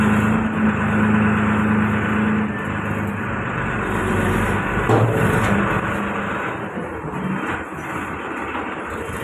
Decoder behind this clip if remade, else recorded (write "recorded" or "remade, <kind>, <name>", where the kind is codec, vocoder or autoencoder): recorded